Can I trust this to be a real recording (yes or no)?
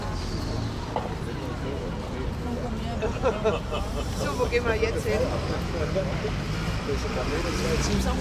yes